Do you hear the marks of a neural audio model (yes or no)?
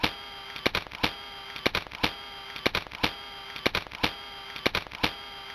no